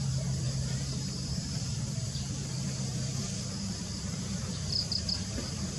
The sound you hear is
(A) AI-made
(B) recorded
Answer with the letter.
A